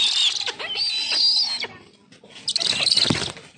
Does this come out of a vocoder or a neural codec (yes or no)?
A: no